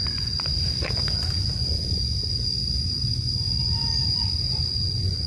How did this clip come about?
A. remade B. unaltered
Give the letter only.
A